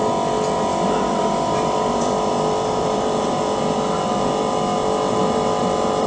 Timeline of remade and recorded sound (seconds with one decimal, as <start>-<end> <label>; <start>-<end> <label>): 0.0-0.7 recorded; 0.7-4.4 remade; 4.4-5.2 recorded; 5.2-6.1 remade

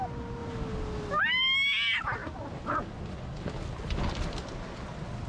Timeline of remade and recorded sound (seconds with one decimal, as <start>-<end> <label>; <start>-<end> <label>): 0.0-5.3 recorded

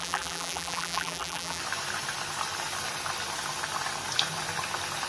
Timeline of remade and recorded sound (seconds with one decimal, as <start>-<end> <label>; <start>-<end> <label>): 0.0-1.6 remade; 1.6-5.1 recorded

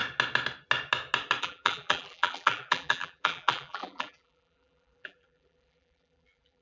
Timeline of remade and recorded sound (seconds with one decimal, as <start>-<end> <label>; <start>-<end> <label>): 0.0-1.4 recorded; 1.4-6.6 remade